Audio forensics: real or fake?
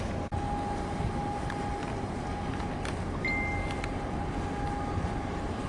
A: real